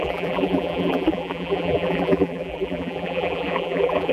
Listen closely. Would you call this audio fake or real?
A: fake